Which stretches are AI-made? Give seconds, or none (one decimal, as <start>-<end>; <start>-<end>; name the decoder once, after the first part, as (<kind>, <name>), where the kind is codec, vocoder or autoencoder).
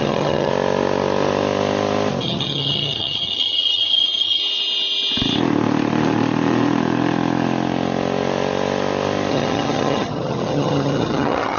0.0-0.5 (vocoder, HiFi-GAN); 2.2-4.4; 9.3-11.6